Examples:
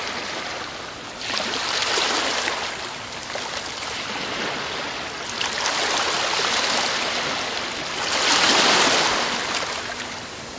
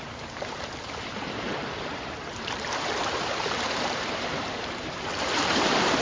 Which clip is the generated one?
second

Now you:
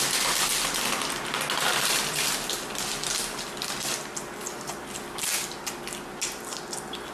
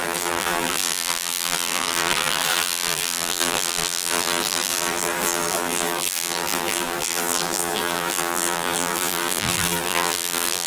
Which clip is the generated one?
second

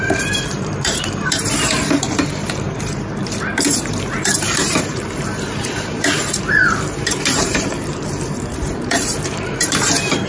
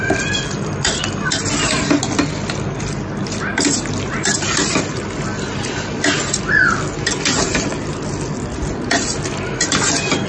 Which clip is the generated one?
first